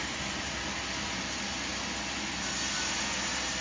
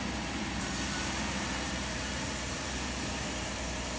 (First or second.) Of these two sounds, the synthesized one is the second